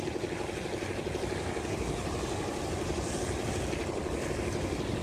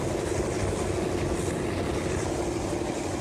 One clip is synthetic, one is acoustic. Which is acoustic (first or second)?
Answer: second